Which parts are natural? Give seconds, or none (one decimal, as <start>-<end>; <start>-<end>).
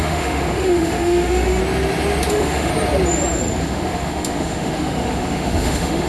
1.6-2.3; 2.7-3.6